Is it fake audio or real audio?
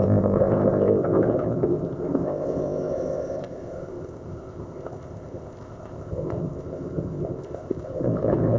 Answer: fake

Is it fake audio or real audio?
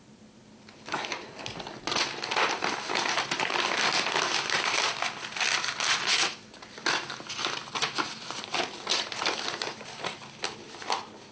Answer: real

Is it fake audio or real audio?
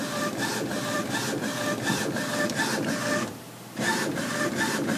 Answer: fake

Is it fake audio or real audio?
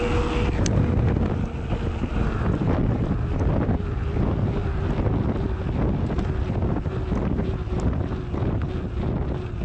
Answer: real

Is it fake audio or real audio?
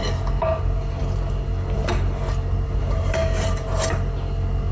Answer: real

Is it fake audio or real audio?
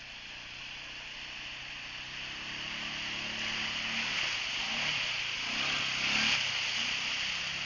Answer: real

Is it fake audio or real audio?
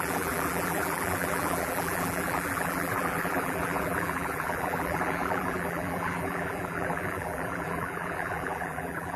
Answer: fake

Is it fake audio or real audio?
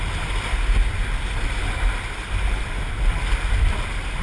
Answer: real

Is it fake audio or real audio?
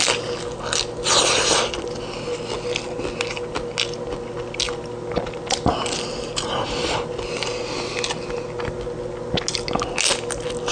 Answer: real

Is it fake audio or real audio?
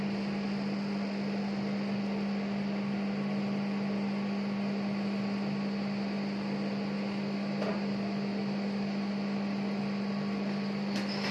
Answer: real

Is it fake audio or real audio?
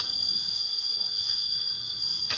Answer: fake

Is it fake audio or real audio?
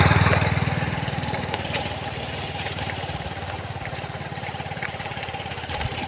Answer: fake